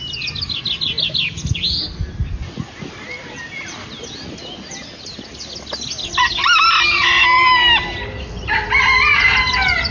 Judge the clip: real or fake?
real